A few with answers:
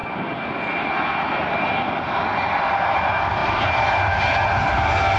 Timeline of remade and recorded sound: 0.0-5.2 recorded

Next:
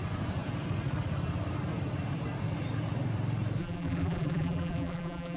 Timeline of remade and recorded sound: 0.0-3.6 recorded; 3.6-5.4 remade

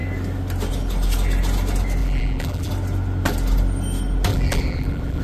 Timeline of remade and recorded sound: 0.0-2.0 recorded; 2.0-2.7 remade; 2.7-4.3 recorded; 4.3-5.2 remade

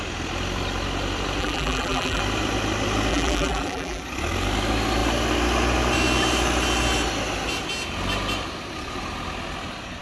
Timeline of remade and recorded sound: 0.0-1.4 recorded; 1.4-2.2 remade; 2.2-3.1 recorded; 3.1-4.0 remade; 4.0-10.0 recorded

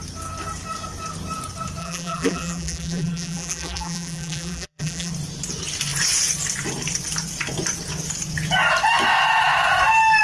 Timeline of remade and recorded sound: 0.0-1.8 recorded; 1.8-5.1 remade; 5.1-10.2 recorded

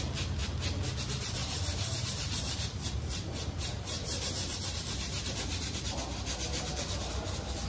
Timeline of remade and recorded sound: 0.0-1.4 recorded; 1.4-6.0 remade; 6.0-7.7 recorded

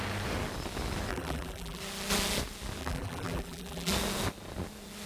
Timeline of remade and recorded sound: 0.0-1.1 recorded; 1.1-1.8 remade; 1.8-2.8 recorded; 2.8-3.9 remade; 3.9-5.1 recorded

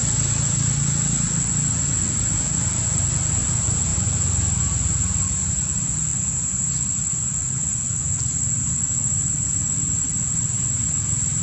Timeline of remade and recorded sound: 0.0-0.7 remade; 0.7-11.4 recorded